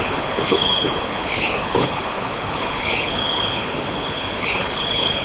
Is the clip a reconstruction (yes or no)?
yes